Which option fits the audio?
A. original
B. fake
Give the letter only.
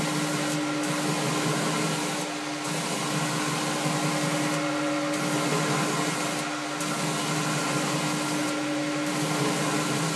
A